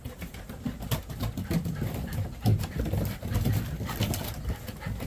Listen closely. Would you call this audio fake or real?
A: real